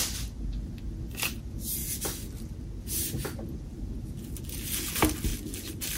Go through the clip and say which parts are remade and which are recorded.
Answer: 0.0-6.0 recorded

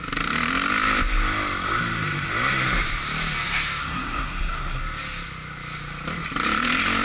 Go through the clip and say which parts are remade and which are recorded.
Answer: 0.0-3.8 recorded; 3.8-4.8 remade; 4.8-7.0 recorded